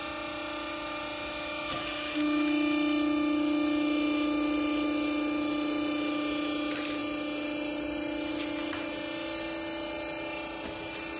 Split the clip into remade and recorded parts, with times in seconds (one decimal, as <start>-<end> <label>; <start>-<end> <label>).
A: 0.0-11.2 recorded